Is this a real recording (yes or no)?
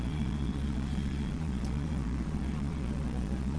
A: no